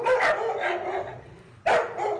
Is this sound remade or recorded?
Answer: recorded